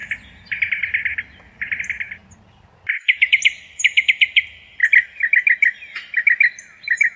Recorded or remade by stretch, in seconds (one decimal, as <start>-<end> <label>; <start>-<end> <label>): 0.0-7.2 recorded